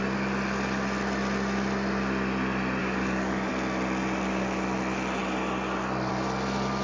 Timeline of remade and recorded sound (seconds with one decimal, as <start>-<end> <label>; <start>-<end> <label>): 0.0-2.8 recorded; 2.8-3.5 remade; 3.5-6.8 recorded